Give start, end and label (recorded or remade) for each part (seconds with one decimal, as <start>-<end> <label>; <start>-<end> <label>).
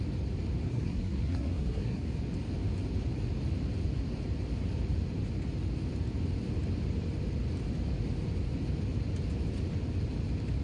0.0-0.7 recorded; 0.7-2.1 remade; 2.1-10.6 recorded